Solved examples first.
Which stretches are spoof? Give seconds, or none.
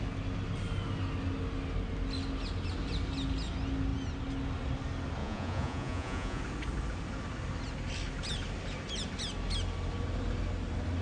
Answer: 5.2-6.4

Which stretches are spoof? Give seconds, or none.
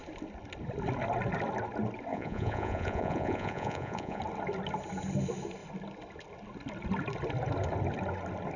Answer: 2.1-4.2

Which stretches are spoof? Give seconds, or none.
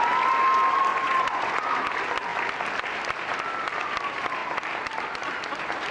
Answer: 0.9-1.7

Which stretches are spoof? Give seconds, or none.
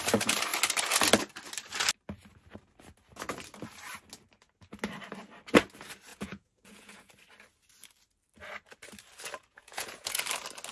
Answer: 6.1-7.1; 9.4-10.2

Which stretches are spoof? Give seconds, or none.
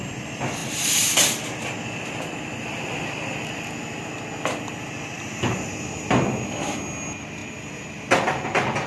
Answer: none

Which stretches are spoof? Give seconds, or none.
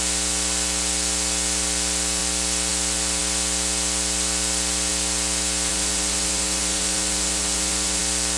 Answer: 5.7-8.0